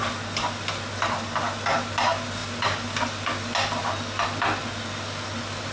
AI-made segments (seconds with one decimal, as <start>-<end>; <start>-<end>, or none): none

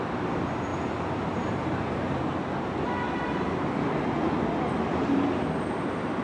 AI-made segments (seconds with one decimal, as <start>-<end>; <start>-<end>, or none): 0.7-2.2; 4.9-5.4

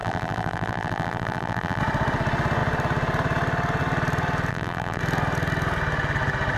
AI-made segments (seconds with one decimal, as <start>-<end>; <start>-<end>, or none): 0.0-1.8; 4.5-5.0

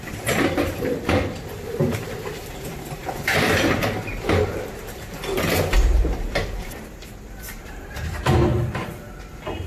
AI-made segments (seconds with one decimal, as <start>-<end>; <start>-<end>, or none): 0.0-9.7

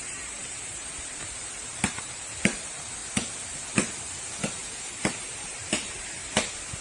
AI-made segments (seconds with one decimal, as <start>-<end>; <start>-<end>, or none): 0.0-3.0; 4.2-6.2

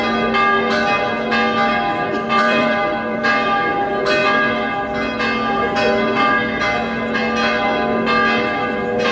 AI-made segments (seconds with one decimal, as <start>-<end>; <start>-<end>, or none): 2.1-3.3

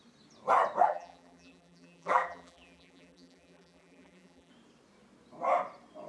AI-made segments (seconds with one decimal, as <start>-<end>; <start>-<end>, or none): 0.8-4.5

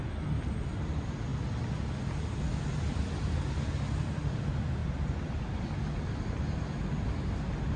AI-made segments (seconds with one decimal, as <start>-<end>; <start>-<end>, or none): 4.8-5.6